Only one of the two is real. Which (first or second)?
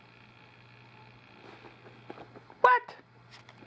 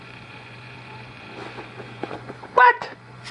first